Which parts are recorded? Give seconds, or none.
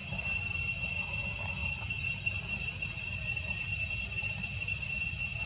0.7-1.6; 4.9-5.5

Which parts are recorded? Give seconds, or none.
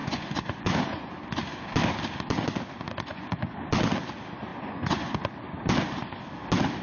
1.1-3.1; 3.7-4.5; 5.3-6.8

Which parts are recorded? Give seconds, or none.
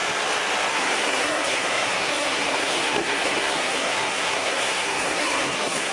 0.0-0.7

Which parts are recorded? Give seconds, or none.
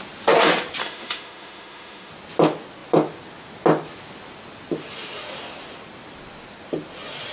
0.0-0.8; 2.1-7.3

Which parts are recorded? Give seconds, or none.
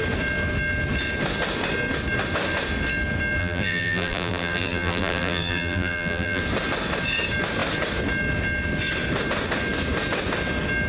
0.0-3.4; 6.4-10.9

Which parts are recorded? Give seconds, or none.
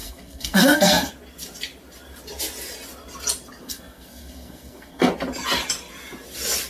1.1-3.6; 5.1-6.7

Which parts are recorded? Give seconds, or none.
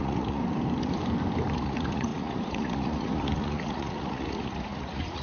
0.4-1.5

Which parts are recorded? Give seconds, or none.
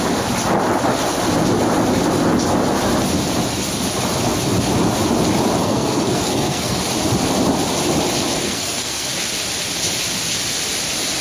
0.0-5.6; 6.8-8.4; 9.1-11.2